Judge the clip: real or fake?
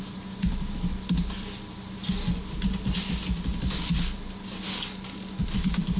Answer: real